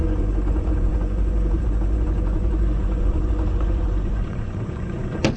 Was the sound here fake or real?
fake